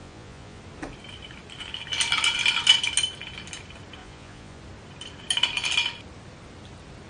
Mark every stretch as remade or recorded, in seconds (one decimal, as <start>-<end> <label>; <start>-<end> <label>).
0.0-0.6 remade; 0.6-4.0 recorded; 4.0-4.6 remade; 4.6-7.1 recorded